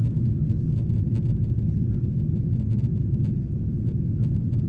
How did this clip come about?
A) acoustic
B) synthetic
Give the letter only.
A